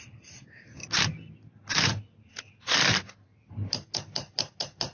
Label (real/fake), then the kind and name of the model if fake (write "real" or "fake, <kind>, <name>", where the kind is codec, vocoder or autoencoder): real